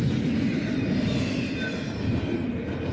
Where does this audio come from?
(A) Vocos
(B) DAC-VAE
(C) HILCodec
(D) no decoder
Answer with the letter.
D